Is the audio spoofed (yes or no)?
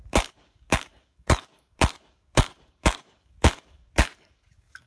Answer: yes